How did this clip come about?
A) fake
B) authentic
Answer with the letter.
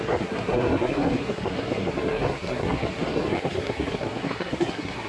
A